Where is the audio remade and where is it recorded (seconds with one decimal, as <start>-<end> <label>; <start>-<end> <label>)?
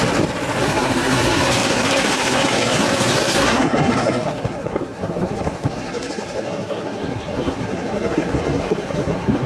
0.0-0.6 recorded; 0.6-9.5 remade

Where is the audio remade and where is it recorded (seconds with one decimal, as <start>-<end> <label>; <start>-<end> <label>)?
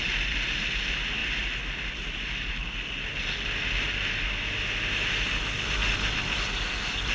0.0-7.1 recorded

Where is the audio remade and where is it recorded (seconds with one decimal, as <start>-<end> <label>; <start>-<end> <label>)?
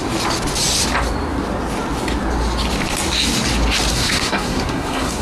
0.0-3.9 recorded; 3.9-5.2 remade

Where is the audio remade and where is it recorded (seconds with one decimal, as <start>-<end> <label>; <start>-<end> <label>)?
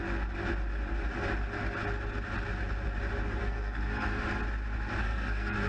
0.0-3.4 recorded; 3.4-4.2 remade; 4.2-5.0 recorded; 5.0-5.7 remade